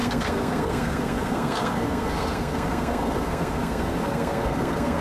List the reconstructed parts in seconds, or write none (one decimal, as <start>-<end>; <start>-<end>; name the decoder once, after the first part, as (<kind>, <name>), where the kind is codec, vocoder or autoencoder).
0.0-5.0 (codec, SNAC)

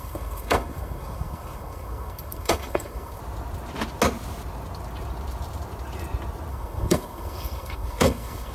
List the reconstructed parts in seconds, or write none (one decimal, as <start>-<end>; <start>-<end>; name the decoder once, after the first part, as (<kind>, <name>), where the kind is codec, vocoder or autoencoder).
0.0-3.2 (codec, SNAC); 6.5-8.5

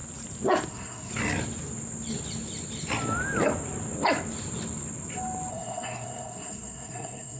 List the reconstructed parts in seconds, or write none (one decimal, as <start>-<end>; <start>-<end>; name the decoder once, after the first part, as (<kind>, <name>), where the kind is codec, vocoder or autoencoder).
0.7-1.1 (codec, SNAC); 5.5-7.4

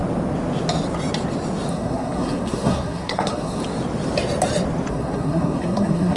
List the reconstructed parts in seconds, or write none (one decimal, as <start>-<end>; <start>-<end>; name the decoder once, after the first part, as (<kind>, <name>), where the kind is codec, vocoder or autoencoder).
1.7-3.6 (codec, SNAC); 4.9-6.2